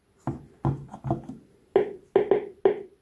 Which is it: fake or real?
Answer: real